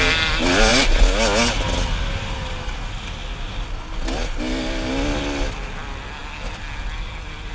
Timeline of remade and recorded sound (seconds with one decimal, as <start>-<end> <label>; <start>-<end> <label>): 0.0-7.5 recorded